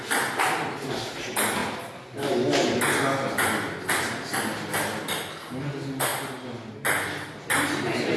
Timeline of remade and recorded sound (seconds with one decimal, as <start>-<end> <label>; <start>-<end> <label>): 0.0-8.2 recorded